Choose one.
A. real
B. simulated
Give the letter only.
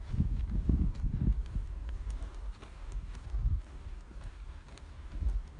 B